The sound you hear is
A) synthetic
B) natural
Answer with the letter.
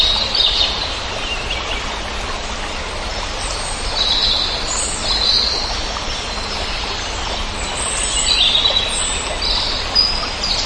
B